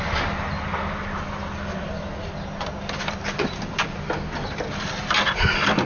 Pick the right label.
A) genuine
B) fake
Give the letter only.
A